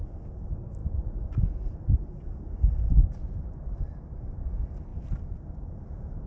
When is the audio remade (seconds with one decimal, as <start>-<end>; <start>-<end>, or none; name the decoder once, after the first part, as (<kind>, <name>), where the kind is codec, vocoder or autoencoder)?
none